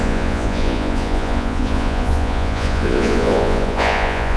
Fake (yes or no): yes